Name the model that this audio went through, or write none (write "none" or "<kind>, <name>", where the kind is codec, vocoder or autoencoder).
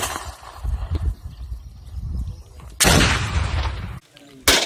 none